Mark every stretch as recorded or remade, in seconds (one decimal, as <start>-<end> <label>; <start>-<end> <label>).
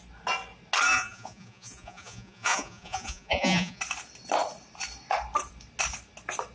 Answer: 0.0-0.9 recorded; 0.9-3.8 remade; 3.8-6.5 recorded